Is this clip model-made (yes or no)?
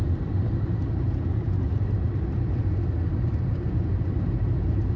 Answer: yes